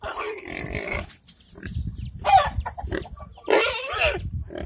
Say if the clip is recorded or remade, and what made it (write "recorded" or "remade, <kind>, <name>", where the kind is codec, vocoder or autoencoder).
remade, vocoder, BigVGAN v2